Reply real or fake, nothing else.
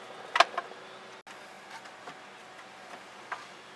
real